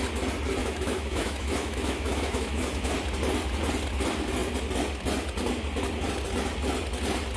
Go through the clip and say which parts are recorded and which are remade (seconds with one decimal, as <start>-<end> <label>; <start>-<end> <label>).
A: 0.0-0.6 recorded; 0.6-2.9 remade; 2.9-7.4 recorded